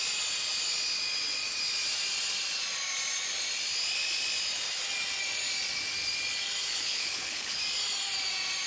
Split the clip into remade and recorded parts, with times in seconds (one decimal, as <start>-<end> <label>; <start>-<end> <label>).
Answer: 0.0-6.7 recorded; 6.7-7.6 remade; 7.6-8.7 recorded